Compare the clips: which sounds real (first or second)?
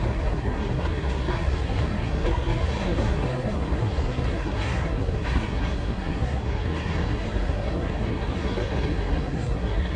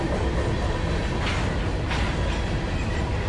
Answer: second